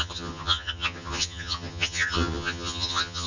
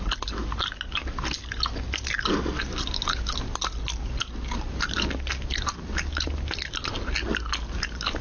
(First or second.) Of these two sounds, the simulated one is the first